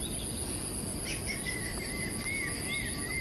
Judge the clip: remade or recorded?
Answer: recorded